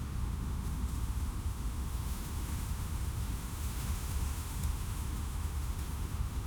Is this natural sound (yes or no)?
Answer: no